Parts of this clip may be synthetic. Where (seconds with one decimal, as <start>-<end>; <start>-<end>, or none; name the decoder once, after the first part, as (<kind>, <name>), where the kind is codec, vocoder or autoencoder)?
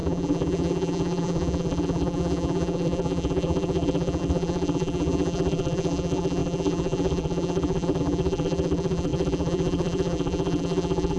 0.0-11.2 (vocoder, BigVGAN v2)